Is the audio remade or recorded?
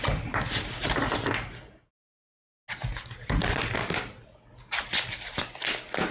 recorded